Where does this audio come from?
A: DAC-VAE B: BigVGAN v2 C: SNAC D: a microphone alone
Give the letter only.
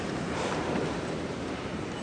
B